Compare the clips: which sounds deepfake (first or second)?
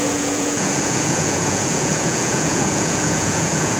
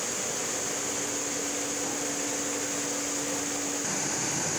first